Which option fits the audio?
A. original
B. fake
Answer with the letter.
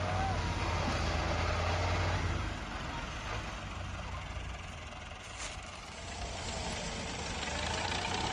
A